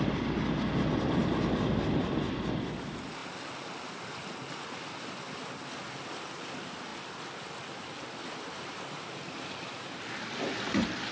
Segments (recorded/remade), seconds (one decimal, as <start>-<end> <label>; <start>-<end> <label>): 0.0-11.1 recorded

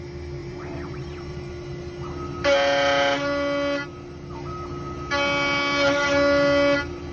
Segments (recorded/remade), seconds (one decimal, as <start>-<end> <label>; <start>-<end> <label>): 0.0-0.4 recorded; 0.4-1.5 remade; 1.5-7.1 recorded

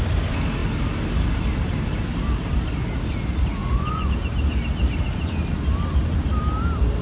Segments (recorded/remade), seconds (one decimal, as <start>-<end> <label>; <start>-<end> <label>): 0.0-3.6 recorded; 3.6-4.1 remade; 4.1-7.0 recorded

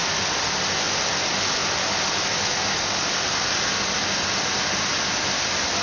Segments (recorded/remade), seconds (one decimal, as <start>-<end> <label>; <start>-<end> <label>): 0.0-5.8 recorded

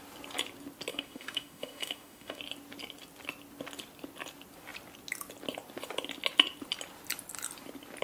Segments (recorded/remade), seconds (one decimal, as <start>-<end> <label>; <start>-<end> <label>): 0.0-0.9 recorded; 0.9-2.4 remade; 2.4-8.0 recorded

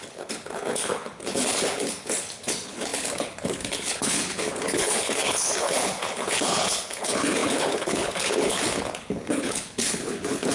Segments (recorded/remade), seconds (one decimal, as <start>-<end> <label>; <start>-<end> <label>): 0.0-10.5 remade

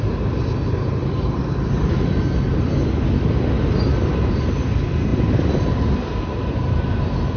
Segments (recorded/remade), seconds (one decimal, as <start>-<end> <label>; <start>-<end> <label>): 0.0-7.4 recorded